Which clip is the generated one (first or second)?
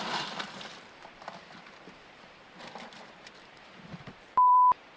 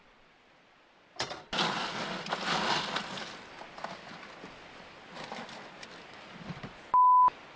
first